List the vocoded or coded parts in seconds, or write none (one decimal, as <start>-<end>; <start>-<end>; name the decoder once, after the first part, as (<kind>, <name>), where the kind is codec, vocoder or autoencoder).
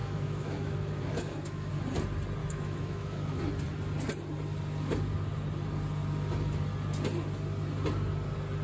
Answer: 0.0-1.7 (autoencoder, DAC-VAE); 2.4-3.4